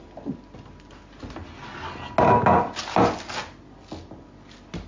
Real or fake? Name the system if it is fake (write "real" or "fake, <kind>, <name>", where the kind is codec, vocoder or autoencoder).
real